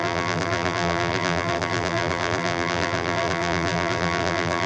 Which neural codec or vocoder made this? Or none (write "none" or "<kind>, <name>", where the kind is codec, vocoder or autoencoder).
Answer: vocoder, BigVGAN v2